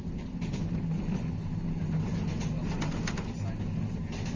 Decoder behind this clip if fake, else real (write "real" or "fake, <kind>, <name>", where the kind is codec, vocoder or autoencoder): real